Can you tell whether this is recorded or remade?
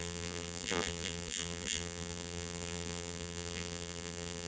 remade